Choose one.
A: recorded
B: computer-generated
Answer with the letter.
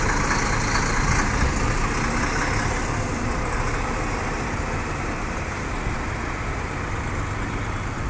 A